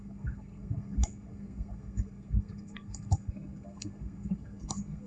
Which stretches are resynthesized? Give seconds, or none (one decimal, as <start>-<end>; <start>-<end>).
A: 0.0-5.1